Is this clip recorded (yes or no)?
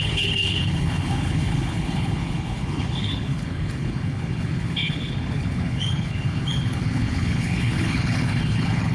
no